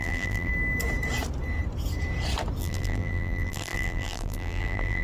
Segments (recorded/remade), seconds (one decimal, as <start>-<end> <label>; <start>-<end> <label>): 0.0-0.5 remade; 0.5-2.6 recorded; 2.6-5.0 remade